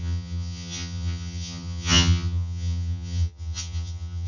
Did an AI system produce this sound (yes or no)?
yes